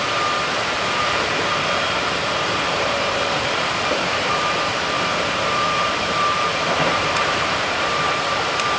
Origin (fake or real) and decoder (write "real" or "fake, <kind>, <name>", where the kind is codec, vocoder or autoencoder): fake, vocoder, BigVGAN v2